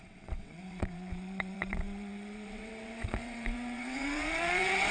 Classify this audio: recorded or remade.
remade